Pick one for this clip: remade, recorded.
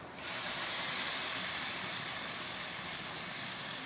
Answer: recorded